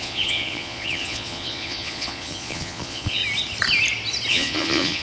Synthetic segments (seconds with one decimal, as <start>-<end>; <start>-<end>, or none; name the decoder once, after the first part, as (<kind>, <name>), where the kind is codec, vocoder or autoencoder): 0.0-3.2 (vocoder, Vocos); 4.3-5.0